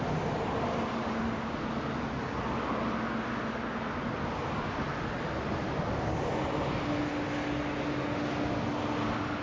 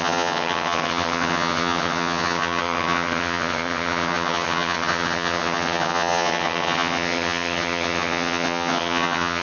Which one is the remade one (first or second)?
second